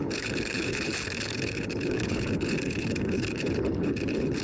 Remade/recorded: remade